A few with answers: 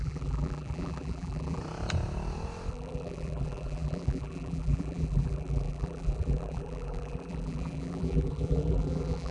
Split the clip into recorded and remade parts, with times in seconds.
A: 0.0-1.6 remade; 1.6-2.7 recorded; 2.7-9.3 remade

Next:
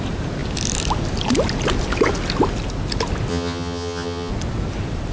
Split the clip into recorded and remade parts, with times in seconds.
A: 0.0-3.3 recorded; 3.3-4.3 remade; 4.3-5.1 recorded

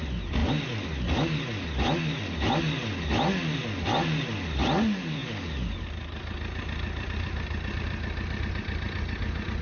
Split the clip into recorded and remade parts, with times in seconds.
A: 0.0-9.6 recorded

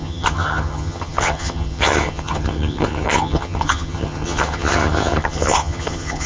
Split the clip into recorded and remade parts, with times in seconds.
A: 0.0-6.3 remade

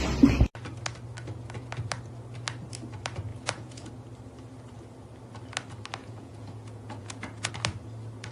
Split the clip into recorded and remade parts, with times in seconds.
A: 0.0-3.3 recorded; 3.3-3.9 remade; 3.9-6.0 recorded; 6.0-7.5 remade; 7.5-8.3 recorded